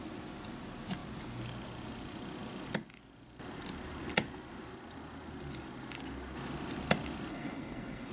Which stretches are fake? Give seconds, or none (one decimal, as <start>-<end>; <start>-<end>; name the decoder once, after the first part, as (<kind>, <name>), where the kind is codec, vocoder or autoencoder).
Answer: 7.3-8.1 (codec, SNAC)